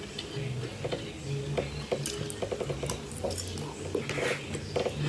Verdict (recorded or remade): recorded